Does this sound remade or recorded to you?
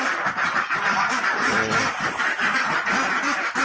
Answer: recorded